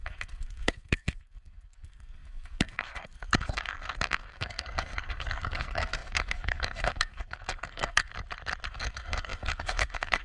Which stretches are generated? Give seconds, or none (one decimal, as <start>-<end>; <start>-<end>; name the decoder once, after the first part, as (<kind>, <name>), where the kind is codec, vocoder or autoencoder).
0.0-8.1 (codec, SNAC); 8.7-10.2